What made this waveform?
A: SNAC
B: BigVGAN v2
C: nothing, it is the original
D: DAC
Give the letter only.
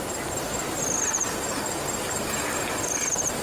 B